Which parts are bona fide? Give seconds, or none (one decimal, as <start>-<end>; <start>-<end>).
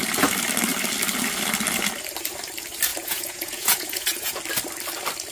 0.0-2.9; 4.4-5.3